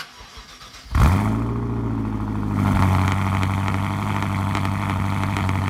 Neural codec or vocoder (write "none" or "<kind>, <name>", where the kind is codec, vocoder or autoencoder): none